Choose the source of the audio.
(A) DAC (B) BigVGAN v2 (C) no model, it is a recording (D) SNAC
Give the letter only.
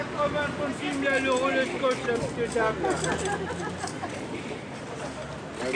C